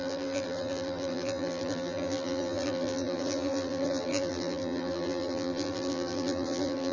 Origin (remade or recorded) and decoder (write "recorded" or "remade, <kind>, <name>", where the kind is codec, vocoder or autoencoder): remade, vocoder, BigVGAN v2